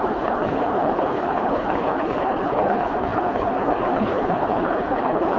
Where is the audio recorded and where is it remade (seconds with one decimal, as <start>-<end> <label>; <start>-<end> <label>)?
0.0-5.4 remade